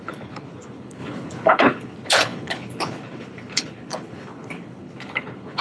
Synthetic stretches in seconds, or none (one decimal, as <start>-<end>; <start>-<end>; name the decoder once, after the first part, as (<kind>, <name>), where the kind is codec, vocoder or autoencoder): 0.0-5.6 (codec, HILCodec)